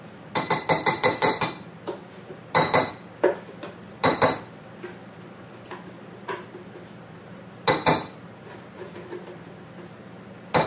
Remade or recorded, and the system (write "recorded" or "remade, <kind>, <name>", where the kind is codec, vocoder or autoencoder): recorded